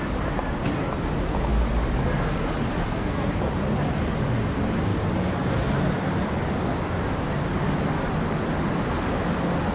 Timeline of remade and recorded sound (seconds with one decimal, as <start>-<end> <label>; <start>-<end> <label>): 0.0-2.8 recorded; 2.8-3.4 remade; 3.4-9.7 recorded

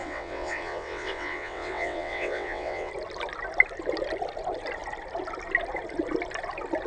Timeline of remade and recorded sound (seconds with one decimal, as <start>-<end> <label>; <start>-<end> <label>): 0.0-2.9 remade; 2.9-6.9 recorded

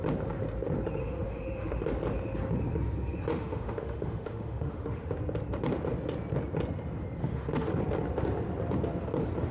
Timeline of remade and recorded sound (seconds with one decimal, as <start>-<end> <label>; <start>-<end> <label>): 0.0-1.0 recorded; 1.0-1.9 remade; 1.9-3.3 recorded; 3.3-5.1 remade; 5.1-7.2 recorded; 7.2-7.7 remade; 7.7-9.5 recorded

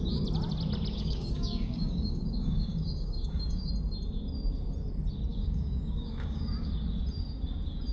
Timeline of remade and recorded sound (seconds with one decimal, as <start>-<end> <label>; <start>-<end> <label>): 0.0-0.9 recorded; 0.9-3.7 remade; 3.7-5.3 recorded; 5.3-6.7 remade; 6.7-7.9 recorded

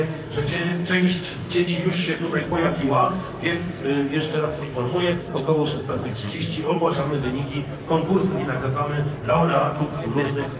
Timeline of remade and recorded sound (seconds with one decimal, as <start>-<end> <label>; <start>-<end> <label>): 0.0-7.2 remade; 7.2-9.2 recorded; 9.2-10.6 remade

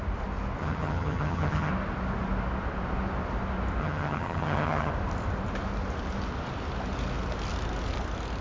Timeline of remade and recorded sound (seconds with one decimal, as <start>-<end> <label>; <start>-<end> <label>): 0.0-0.6 recorded; 0.6-1.7 remade; 1.7-3.8 recorded; 3.8-4.9 remade; 4.9-8.4 recorded

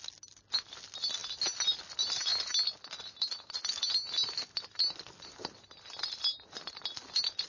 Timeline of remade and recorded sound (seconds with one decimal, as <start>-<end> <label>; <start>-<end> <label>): 0.0-7.5 recorded

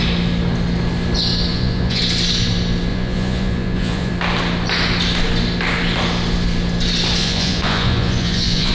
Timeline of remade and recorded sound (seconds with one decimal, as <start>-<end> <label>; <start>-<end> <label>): 0.0-1.5 recorded; 1.5-2.0 remade; 2.0-2.9 recorded; 2.9-4.1 remade; 4.1-7.2 recorded; 7.2-8.7 remade